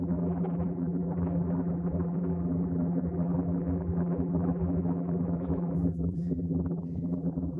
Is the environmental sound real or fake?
fake